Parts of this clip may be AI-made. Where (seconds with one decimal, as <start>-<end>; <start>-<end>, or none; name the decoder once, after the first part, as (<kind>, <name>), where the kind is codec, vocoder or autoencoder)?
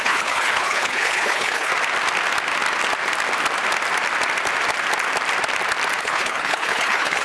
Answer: 0.0-1.7 (codec, HILCodec); 6.0-7.2